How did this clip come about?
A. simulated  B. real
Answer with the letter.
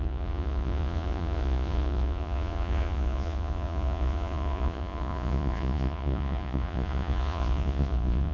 A